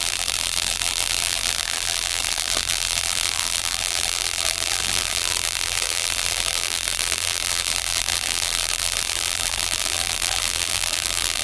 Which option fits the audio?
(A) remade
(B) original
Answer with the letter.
A